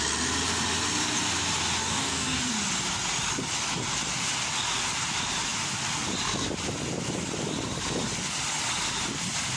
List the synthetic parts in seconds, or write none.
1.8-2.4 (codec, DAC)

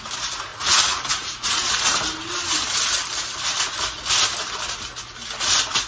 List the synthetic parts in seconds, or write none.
0.5-1.8 (vocoder, Vocos)

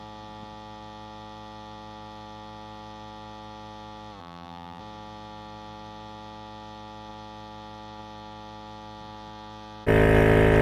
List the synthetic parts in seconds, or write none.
4.2-4.8 (vocoder, BigVGAN v2)

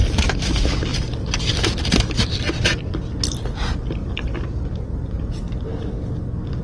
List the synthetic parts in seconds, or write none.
4.0-5.3 (vocoder, BigVGAN v2)

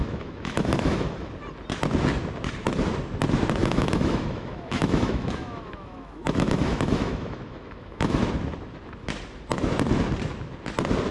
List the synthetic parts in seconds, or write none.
0.0-1.3 (autoencoder, DAC-VAE); 3.6-8.2

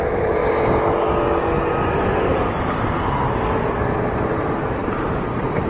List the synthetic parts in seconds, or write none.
0.0-0.4 (vocoder, BigVGAN v2); 3.8-5.7